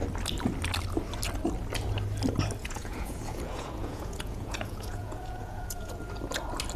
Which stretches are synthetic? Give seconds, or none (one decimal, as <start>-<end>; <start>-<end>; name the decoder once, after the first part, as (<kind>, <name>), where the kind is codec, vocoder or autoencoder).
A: 2.6-5.9 (vocoder, Vocos)